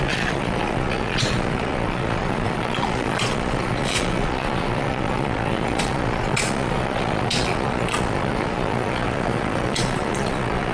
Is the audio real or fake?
fake